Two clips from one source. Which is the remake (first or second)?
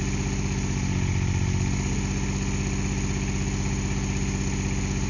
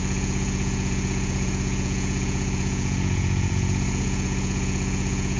second